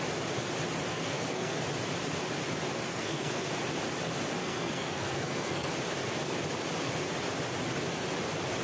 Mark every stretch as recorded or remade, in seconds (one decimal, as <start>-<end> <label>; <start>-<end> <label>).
0.0-0.9 recorded; 0.9-1.6 remade; 1.6-2.9 recorded; 2.9-3.5 remade; 3.5-4.4 recorded; 4.4-5.7 remade; 5.7-8.6 recorded